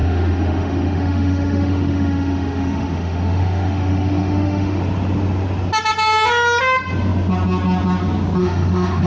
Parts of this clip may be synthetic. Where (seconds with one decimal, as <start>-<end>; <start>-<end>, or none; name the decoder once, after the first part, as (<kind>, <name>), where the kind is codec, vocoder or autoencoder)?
0.0-4.8 (autoencoder, DAC-VAE); 8.4-9.1